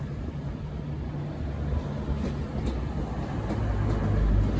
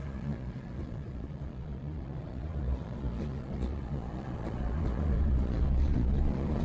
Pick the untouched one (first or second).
first